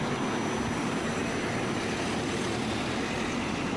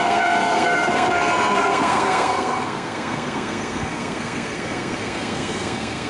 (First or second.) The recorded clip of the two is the first